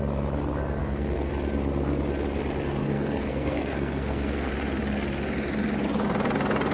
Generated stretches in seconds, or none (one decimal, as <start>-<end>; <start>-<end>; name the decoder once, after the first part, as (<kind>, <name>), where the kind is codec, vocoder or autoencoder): 0.8-1.3 (codec, SNAC); 2.8-4.5